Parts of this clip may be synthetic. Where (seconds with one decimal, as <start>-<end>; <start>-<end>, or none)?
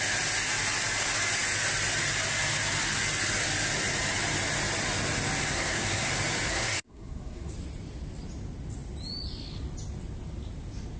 5.4-6.1; 6.5-7.5